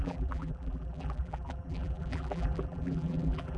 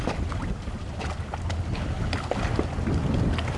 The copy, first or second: first